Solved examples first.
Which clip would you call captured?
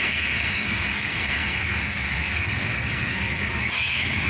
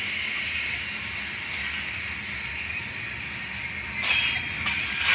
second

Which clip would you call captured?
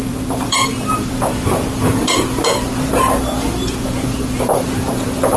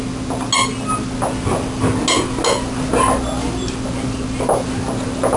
second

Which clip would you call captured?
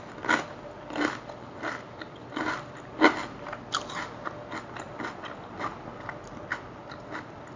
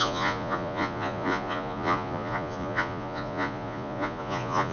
first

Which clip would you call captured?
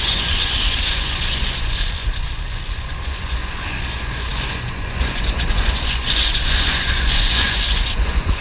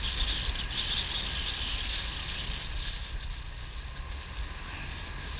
second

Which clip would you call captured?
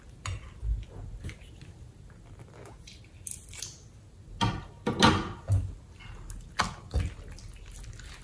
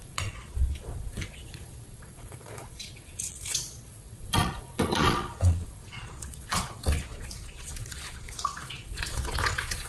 first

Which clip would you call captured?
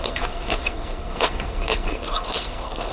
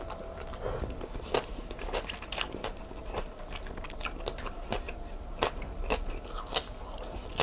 second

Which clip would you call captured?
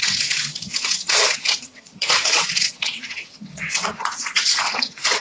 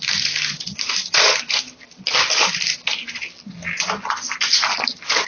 second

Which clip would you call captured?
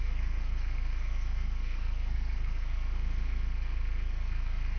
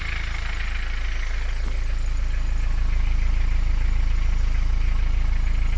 second